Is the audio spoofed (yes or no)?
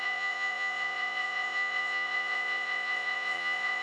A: yes